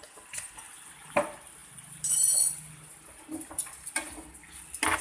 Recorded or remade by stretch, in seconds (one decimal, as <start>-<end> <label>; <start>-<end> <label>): 0.0-5.0 recorded